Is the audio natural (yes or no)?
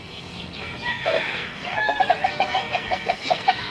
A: no